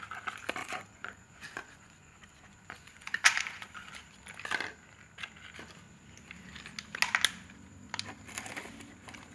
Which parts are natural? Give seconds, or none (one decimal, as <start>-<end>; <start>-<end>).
0.0-0.6; 3.9-9.3